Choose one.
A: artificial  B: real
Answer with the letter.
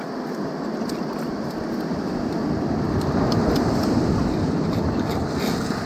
B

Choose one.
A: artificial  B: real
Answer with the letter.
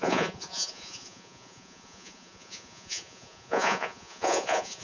A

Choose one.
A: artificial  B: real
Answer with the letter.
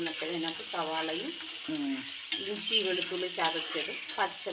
B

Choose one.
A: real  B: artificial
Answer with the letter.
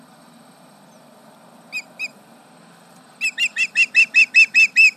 A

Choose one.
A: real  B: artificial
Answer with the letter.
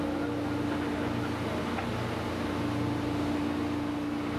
A